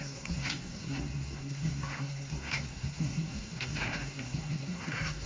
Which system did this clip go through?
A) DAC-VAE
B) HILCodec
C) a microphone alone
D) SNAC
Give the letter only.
D